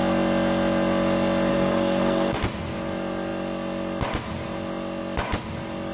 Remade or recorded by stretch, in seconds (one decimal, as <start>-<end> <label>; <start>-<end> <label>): 0.0-1.5 recorded; 1.5-2.4 remade; 2.4-5.9 recorded